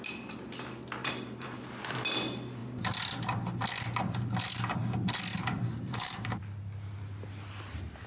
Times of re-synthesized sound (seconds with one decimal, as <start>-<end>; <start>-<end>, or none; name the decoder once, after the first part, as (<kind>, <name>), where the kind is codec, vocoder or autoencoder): 1.0-1.8 (vocoder, BigVGAN v2); 5.3-6.4